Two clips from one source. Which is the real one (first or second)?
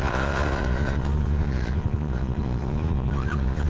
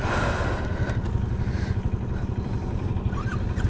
second